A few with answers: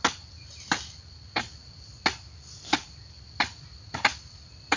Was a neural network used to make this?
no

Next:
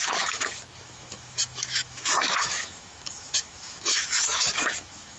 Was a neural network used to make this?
yes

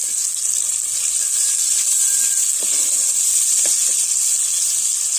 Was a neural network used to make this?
no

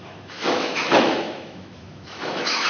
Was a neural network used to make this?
yes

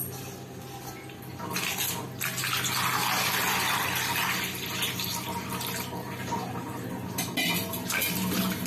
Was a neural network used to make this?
no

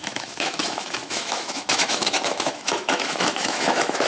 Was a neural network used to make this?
yes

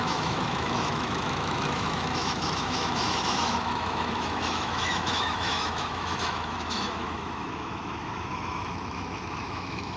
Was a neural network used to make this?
yes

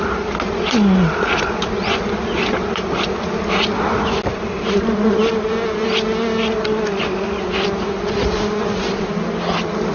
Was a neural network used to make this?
no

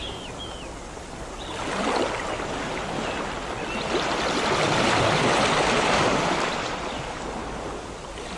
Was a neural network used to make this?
no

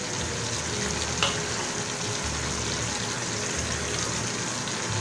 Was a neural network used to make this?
no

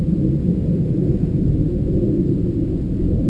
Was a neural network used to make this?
no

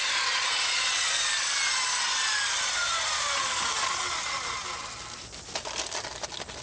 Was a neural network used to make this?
no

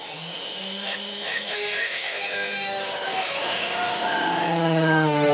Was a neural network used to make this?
yes